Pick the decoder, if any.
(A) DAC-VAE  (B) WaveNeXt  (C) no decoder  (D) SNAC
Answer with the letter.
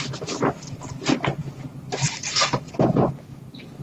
C